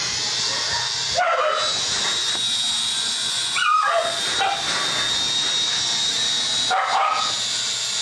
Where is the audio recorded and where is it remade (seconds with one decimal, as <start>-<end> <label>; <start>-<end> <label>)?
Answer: 0.0-2.9 recorded; 2.9-4.2 remade; 4.2-8.0 recorded